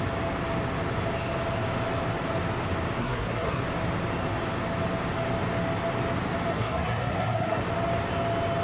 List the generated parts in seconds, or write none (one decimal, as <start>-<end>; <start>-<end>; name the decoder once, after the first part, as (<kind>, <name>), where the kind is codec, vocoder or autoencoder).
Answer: 3.0-3.6 (codec, SNAC); 6.5-7.6